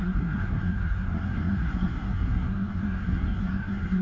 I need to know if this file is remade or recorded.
remade